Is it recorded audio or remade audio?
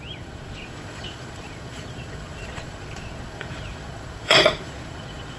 remade